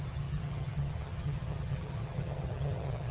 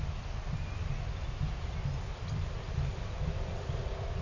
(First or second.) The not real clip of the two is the first